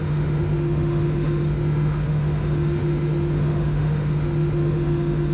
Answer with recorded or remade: remade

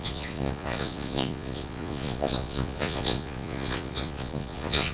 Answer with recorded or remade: remade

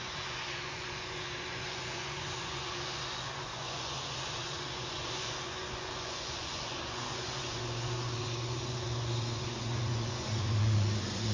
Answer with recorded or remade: remade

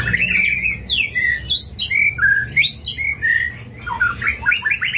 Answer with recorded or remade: recorded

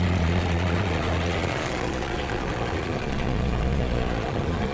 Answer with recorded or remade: remade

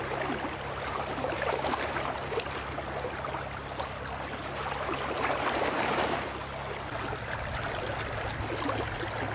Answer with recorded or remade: recorded